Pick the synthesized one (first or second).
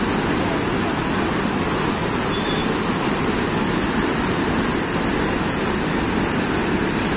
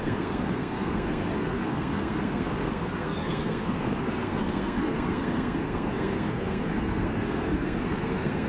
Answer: second